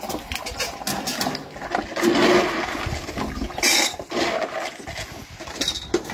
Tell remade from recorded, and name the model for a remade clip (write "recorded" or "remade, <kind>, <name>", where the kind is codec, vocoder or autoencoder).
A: recorded